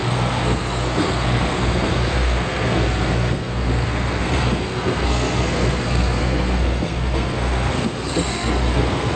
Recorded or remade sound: remade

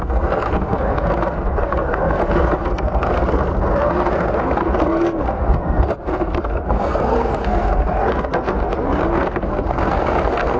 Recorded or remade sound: remade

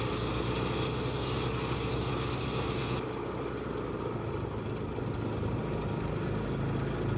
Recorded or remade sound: recorded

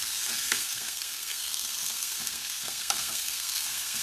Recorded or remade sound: remade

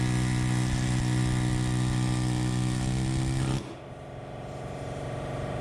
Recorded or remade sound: recorded